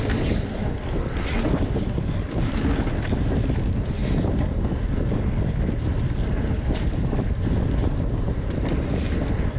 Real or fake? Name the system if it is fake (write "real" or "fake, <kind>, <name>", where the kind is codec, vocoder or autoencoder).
real